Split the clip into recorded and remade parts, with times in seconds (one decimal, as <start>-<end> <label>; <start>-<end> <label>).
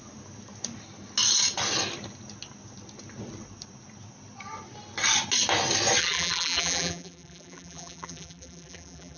0.0-6.0 recorded; 6.0-9.2 remade